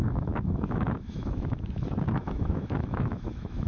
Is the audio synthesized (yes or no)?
yes